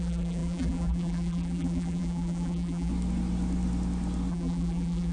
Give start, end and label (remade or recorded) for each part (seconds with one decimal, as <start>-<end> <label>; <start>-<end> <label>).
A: 0.0-2.9 remade; 2.9-4.3 recorded; 4.3-5.1 remade